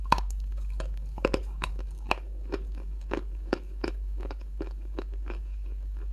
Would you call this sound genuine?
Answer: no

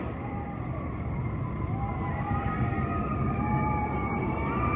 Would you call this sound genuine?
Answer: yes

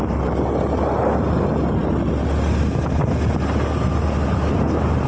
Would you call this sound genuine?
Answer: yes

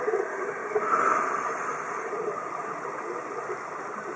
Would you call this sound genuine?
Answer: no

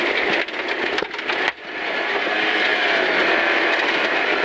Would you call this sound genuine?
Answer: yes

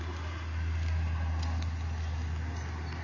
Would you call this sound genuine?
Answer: yes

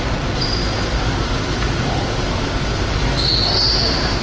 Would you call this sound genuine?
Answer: yes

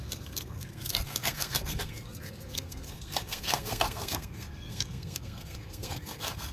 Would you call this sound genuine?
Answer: no